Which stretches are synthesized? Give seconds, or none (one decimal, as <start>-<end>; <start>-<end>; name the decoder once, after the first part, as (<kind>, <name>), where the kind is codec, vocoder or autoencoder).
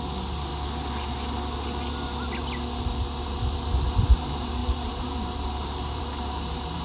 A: 0.0-0.5 (vocoder, BigVGAN v2); 4.1-6.8